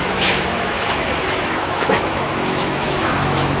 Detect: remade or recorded remade